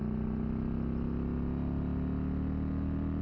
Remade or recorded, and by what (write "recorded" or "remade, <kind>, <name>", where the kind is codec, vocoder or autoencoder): recorded